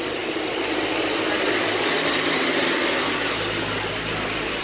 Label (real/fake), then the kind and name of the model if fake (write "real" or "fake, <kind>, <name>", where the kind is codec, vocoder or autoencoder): real